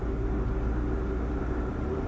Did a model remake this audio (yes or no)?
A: no